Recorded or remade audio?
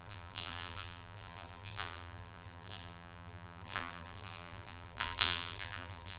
remade